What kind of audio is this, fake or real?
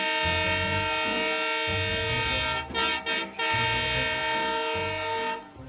real